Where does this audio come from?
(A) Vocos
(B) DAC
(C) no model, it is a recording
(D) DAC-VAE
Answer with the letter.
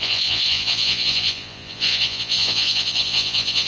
A